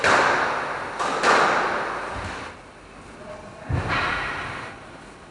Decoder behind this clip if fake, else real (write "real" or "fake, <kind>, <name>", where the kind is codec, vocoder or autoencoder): real